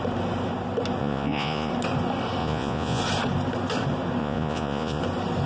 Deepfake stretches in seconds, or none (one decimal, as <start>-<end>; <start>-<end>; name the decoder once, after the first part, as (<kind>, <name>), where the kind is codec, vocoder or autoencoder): 1.0-1.7 (vocoder, Vocos); 2.4-3.0; 4.2-5.0